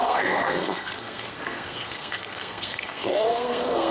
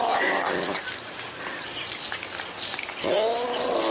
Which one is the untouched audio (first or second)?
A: second